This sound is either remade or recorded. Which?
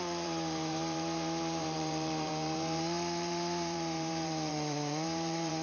remade